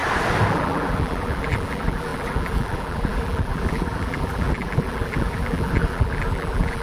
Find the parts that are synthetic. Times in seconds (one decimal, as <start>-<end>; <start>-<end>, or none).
0.5-6.8